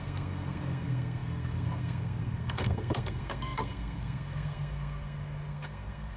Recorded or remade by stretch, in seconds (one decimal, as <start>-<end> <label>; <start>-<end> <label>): 0.0-6.2 remade